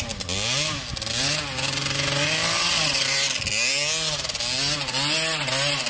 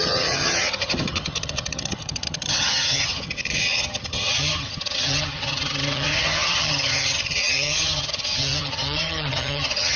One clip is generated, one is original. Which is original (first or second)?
first